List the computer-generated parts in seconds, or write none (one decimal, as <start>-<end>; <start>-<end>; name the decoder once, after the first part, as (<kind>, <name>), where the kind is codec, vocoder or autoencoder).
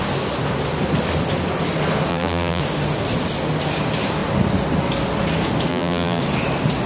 2.1-2.6 (vocoder, BigVGAN v2); 5.7-6.2